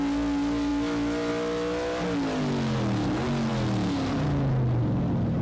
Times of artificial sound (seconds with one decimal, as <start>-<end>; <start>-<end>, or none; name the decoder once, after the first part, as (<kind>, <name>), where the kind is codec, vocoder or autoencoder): none